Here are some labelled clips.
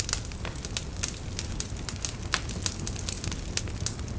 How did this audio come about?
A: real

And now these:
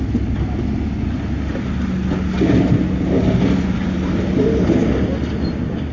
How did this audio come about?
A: real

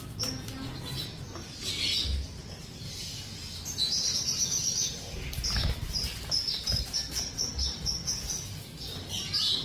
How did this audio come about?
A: real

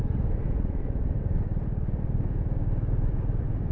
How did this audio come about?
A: real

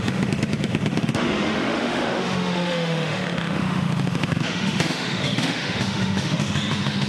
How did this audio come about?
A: fake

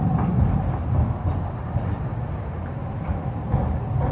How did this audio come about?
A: real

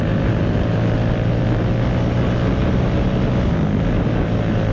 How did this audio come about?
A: real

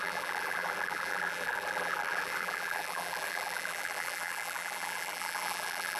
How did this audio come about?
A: fake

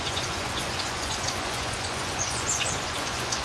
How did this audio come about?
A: fake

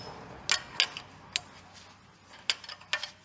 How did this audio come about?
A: real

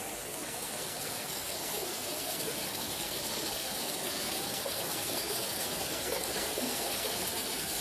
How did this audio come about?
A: fake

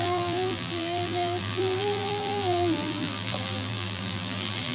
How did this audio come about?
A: fake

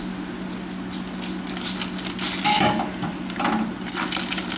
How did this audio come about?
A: real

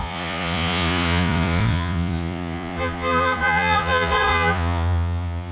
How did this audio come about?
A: fake